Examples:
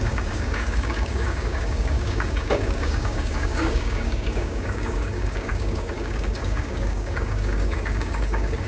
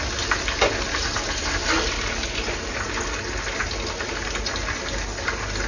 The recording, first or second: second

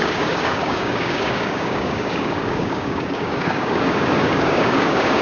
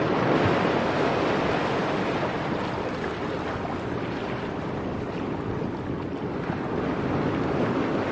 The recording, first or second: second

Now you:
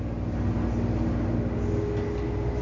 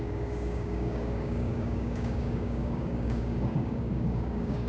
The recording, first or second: first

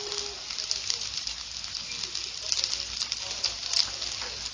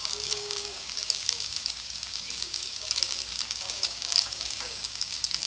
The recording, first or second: first